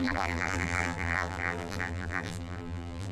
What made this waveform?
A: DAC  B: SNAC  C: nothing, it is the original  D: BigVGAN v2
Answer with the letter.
D